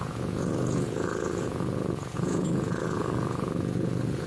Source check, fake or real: fake